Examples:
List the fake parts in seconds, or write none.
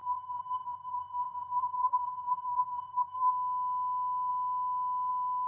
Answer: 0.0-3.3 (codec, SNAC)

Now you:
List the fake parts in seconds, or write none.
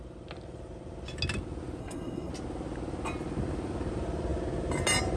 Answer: 1.8-2.3 (codec, SNAC)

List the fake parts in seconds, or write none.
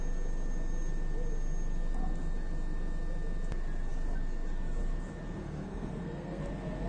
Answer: 5.4-6.4 (codec, SNAC)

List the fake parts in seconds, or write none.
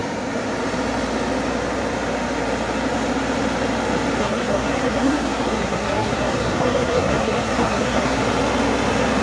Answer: 4.2-8.2 (codec, SNAC)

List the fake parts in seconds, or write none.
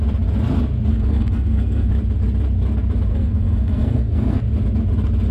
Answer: 0.9-1.9 (codec, SNAC); 3.1-4.4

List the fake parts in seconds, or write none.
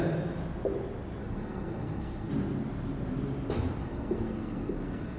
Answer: 1.2-2.3 (codec, SNAC); 3.8-5.2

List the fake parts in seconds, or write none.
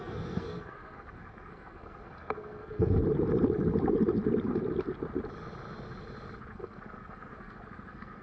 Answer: 0.0-3.0 (codec, SNAC); 6.5-8.2